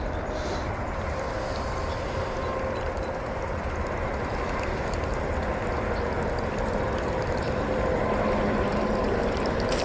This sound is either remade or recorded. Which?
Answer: recorded